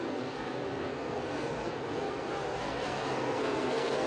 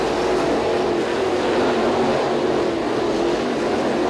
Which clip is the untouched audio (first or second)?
second